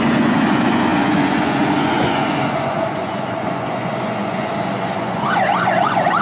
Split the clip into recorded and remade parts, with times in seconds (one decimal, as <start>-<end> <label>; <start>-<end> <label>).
0.0-6.2 remade